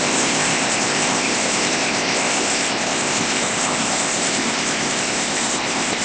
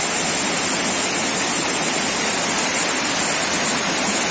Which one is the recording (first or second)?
second